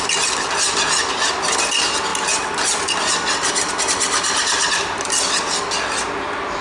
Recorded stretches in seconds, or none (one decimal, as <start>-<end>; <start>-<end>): 0.0-6.6